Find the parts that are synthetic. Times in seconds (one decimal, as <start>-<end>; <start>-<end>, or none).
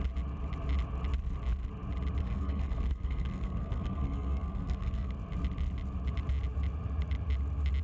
2.2-5.1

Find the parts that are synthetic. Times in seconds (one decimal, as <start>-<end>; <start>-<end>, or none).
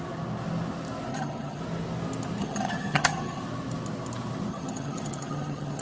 1.1-1.6; 2.4-3.4; 4.5-5.8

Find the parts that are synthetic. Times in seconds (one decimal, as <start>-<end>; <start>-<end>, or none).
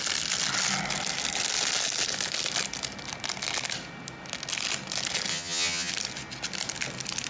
5.3-5.9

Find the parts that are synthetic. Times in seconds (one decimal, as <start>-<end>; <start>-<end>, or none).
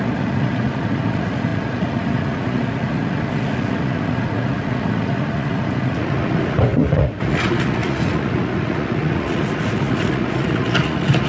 0.0-11.3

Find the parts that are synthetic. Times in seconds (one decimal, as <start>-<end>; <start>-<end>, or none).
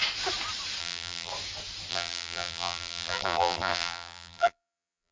0.8-1.3; 1.9-5.1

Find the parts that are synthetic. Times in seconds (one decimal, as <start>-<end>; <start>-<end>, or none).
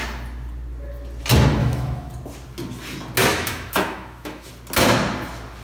1.6-2.1; 3.3-4.5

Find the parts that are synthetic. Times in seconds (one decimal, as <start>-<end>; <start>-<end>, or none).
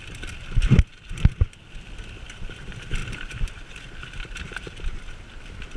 none